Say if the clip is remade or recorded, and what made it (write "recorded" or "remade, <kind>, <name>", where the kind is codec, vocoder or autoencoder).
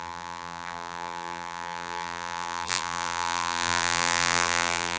remade, vocoder, BigVGAN v2